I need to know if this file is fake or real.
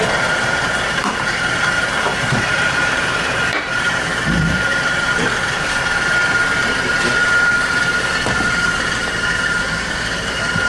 fake